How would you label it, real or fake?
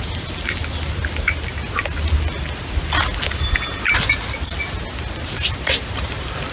real